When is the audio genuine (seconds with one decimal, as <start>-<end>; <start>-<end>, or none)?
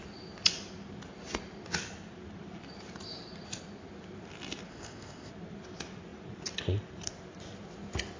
0.0-4.7; 5.3-8.2